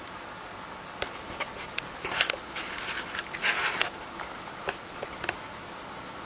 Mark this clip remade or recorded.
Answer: recorded